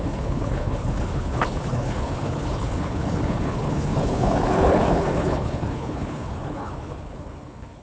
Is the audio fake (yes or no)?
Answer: yes